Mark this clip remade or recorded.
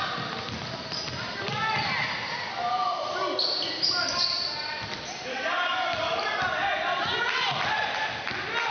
recorded